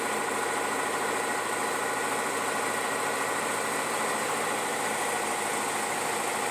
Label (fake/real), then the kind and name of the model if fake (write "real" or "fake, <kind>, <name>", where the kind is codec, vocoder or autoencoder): real